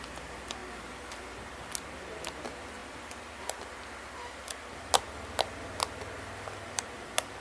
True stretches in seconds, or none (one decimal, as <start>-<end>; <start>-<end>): 0.0-7.4